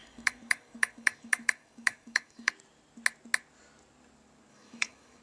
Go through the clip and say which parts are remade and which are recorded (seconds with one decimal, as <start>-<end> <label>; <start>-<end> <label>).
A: 0.0-2.5 remade; 2.5-4.5 recorded; 4.5-5.2 remade

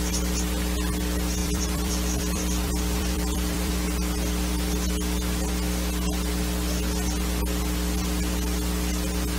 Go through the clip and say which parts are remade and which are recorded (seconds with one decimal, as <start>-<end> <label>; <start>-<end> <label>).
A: 0.0-1.4 recorded; 1.4-3.7 remade; 3.7-9.4 recorded

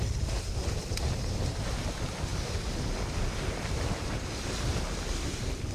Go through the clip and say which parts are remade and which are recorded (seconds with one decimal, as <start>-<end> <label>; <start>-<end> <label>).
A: 0.0-5.7 recorded

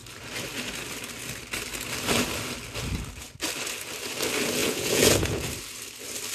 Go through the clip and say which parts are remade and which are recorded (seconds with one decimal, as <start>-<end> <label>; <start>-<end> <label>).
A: 0.0-4.6 recorded; 4.6-5.4 remade; 5.4-6.3 recorded

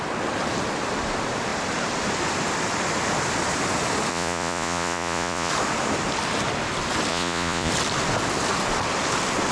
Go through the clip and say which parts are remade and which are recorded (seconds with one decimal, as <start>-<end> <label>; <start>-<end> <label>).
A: 0.0-4.1 recorded; 4.1-5.5 remade; 5.5-7.1 recorded; 7.1-7.7 remade; 7.7-9.5 recorded

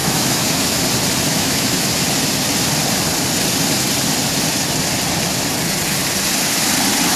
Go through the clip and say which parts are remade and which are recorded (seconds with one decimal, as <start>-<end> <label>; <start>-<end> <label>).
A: 0.0-0.8 remade; 0.8-1.3 recorded; 1.3-1.9 remade; 1.9-7.2 recorded

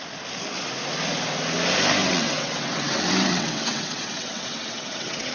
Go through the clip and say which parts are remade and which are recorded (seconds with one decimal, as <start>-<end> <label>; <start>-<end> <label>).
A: 0.0-2.0 recorded; 2.0-5.3 remade

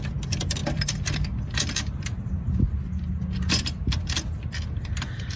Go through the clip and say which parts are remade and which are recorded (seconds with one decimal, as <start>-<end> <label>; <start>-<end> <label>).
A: 0.0-0.6 recorded; 0.6-2.6 remade; 2.6-5.4 recorded